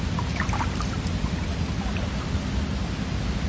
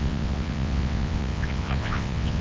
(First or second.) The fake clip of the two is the second